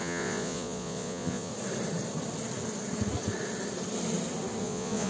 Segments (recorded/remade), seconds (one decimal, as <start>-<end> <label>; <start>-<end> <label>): 0.0-1.5 remade; 1.5-4.6 recorded; 4.6-5.1 remade